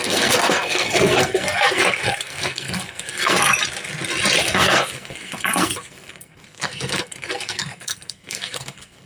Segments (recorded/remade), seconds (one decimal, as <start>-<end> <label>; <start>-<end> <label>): 0.0-3.5 remade; 3.5-4.4 recorded; 4.4-9.1 remade